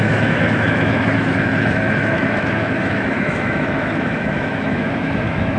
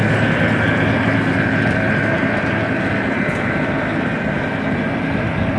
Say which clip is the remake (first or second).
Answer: first